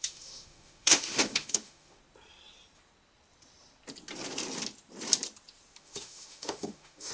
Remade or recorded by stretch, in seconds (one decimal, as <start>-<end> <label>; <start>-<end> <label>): 0.0-2.0 remade; 2.0-5.8 recorded; 5.8-7.1 remade